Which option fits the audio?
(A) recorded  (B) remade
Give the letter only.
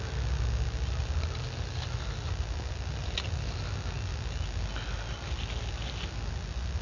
A